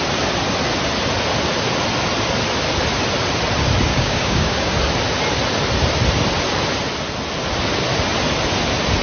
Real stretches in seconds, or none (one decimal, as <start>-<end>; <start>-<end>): 0.0-3.9; 4.7-9.0